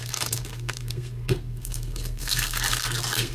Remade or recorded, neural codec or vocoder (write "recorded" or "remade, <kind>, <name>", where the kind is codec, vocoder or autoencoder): remade, codec, SNAC